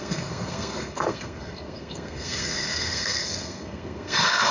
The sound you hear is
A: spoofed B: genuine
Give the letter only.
A